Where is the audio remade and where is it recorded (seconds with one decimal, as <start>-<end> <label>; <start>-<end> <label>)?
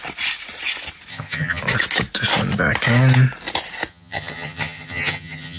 0.0-1.1 recorded; 1.1-1.6 remade; 1.6-3.9 recorded; 3.9-5.6 remade